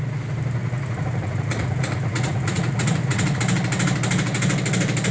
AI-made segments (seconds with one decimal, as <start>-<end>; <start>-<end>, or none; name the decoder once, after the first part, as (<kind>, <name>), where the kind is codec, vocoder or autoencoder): 0.6-3.4 (vocoder, Vocos)